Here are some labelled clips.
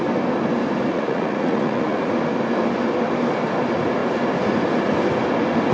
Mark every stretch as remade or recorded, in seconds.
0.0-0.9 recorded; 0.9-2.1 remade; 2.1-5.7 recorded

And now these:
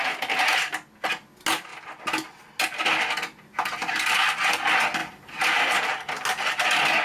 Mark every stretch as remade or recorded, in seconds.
0.0-7.0 recorded